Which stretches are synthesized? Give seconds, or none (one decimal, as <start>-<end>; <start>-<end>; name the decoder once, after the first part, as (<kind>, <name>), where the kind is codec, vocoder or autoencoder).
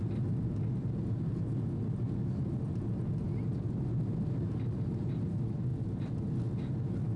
none